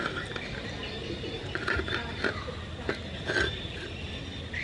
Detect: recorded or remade recorded